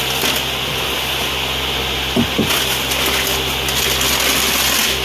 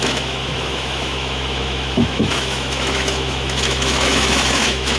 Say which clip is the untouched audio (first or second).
first